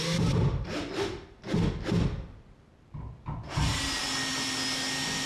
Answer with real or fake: real